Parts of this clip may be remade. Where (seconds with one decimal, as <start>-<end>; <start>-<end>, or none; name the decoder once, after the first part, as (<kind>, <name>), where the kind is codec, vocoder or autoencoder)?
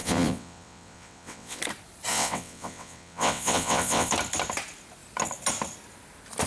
0.0-1.6 (vocoder, WaveNeXt); 2.1-4.1